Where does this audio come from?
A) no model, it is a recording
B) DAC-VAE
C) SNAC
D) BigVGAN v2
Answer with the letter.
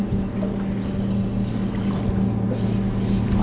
A